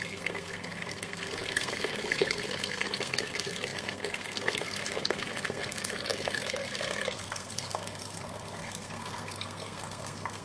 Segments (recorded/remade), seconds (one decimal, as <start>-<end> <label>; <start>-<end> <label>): 0.0-10.4 remade